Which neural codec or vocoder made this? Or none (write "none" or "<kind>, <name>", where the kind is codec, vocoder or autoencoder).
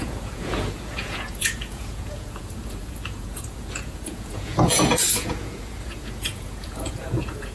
vocoder, Vocos